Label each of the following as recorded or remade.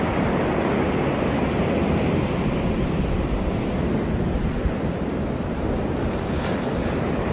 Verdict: recorded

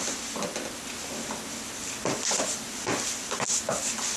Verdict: recorded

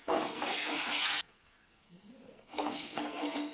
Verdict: remade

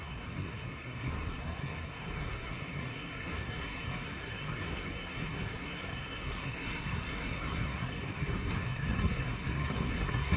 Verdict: remade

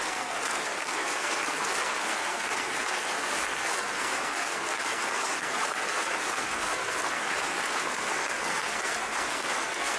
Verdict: remade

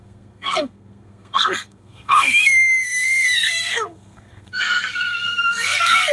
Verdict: remade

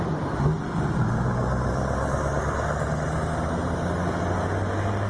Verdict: recorded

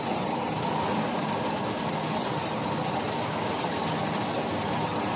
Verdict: recorded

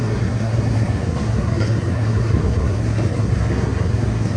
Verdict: remade